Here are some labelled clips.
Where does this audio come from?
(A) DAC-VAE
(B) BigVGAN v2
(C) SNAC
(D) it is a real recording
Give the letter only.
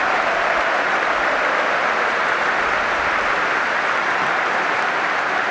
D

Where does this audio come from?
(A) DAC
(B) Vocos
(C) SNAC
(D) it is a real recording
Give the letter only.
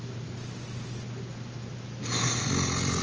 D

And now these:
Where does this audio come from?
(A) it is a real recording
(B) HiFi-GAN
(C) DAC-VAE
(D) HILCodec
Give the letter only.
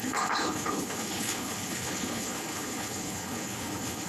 D